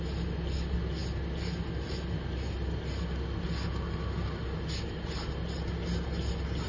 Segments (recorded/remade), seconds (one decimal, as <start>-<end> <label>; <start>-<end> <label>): 0.0-6.7 recorded